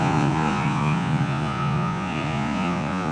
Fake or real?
fake